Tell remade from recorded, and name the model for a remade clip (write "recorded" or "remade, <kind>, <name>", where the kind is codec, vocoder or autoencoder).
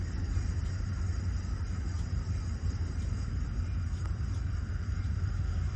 remade, vocoder, BigVGAN v2